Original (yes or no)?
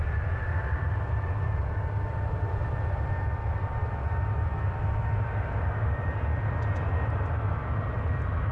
yes